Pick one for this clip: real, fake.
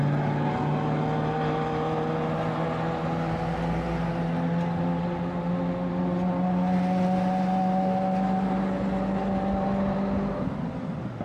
real